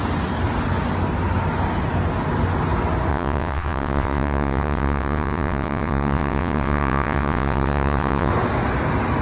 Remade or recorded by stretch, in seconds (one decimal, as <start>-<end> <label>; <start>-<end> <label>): 0.0-3.1 recorded; 3.1-8.3 remade; 8.3-9.2 recorded